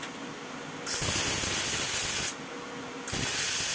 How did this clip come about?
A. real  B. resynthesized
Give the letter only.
A